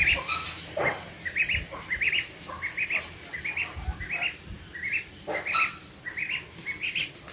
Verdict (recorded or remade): recorded